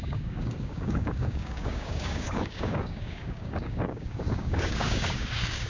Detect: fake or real fake